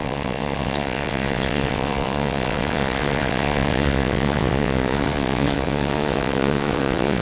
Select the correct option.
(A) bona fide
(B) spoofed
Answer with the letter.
B